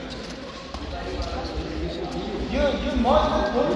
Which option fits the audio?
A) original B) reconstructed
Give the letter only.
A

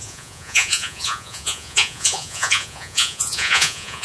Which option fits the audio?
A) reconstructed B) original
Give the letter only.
A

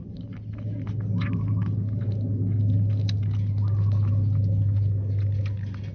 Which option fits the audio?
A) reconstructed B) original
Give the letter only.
B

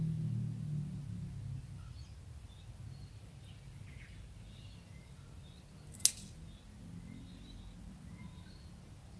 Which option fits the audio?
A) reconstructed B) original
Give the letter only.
B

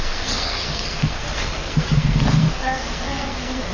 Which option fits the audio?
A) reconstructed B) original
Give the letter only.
A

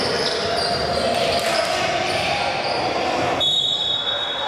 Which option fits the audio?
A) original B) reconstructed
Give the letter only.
A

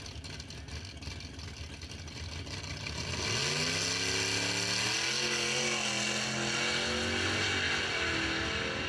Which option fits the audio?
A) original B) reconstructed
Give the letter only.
A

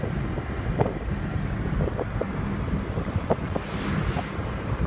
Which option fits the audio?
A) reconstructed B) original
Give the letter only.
B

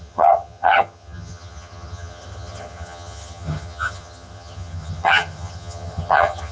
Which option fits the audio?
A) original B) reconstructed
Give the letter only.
B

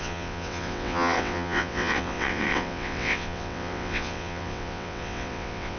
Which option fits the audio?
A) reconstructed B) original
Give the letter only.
A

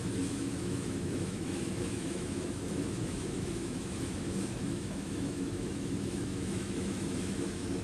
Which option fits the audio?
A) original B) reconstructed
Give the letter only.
B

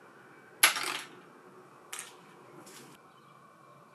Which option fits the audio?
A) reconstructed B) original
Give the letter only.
B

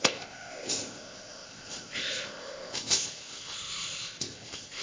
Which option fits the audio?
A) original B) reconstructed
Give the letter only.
B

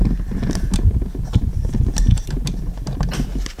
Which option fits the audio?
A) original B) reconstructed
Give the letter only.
A